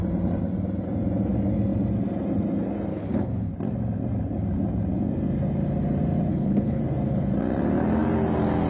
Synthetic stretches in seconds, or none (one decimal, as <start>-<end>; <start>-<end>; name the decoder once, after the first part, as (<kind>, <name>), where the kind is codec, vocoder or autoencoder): 2.9-3.5 (codec, HILCodec); 6.3-6.8